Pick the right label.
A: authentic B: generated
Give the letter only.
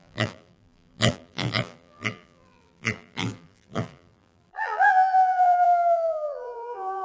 B